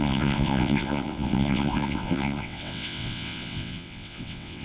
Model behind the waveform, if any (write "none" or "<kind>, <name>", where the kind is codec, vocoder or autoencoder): vocoder, WaveNeXt